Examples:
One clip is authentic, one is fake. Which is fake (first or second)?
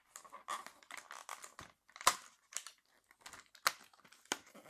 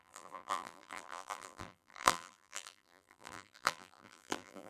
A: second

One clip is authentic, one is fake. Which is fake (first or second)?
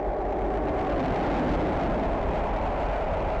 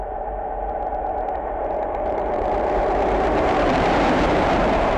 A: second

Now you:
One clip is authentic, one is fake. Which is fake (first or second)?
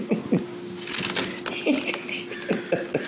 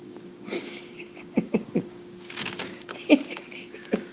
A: second